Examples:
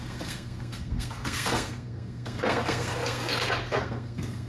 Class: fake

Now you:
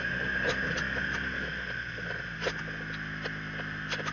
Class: real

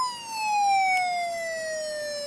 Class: real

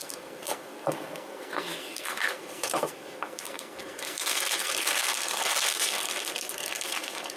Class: fake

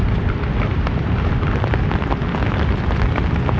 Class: real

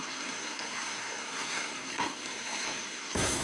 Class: fake